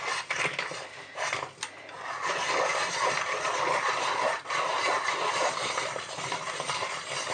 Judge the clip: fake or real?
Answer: real